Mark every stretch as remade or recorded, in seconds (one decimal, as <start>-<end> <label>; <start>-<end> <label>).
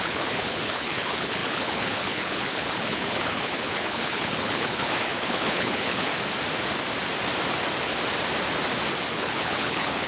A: 0.0-6.1 remade; 6.1-9.1 recorded; 9.1-10.1 remade